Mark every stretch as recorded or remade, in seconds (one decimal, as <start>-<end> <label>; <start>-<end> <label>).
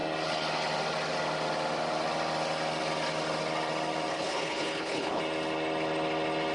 0.0-4.1 recorded; 4.1-5.2 remade; 5.2-6.5 recorded